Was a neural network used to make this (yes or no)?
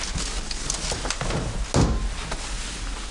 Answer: no